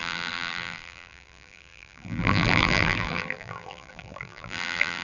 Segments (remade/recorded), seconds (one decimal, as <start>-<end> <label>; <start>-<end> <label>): 0.0-5.0 remade